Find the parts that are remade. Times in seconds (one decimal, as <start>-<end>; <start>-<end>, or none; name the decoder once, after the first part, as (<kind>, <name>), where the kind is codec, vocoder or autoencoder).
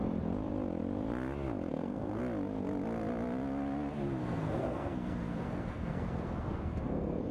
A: 1.7-2.2 (codec, SNAC); 4.2-7.3